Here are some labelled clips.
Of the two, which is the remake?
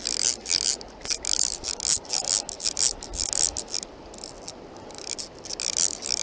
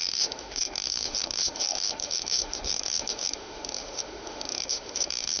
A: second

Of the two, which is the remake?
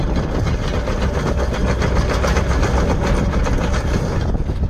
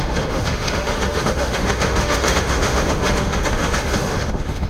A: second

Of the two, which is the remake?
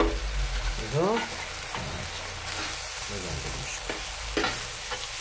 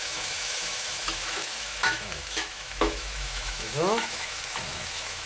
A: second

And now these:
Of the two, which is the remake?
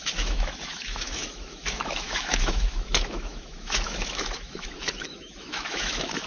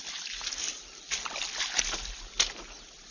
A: first